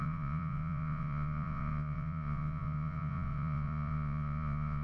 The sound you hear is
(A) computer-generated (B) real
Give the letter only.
A